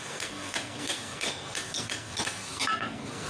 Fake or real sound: fake